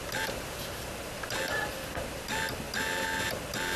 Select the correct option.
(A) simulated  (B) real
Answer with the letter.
B